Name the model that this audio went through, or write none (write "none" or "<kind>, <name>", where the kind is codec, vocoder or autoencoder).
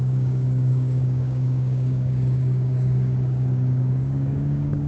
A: codec, DAC